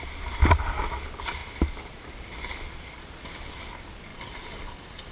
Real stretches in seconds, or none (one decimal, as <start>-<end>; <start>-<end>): 0.0-4.1

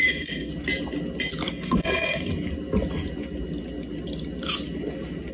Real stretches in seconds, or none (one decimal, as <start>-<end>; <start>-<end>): 0.5-1.5; 2.3-5.3

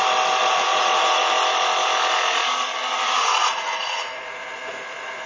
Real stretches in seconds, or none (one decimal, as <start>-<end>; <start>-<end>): 0.0-0.4; 1.3-3.3

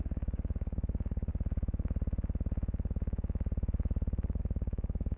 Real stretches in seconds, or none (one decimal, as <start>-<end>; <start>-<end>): 1.3-4.4

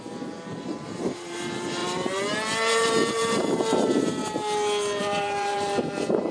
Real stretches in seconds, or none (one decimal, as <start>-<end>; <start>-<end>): 4.2-5.0

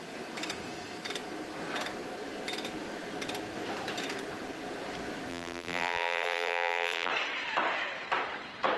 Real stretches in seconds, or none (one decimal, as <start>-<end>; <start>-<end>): 0.0-5.3; 7.1-8.8

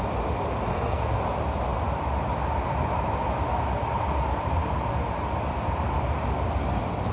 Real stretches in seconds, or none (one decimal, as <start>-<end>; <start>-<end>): 0.0-0.7; 1.2-7.1